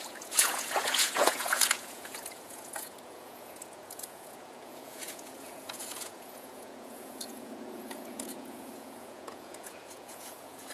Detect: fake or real fake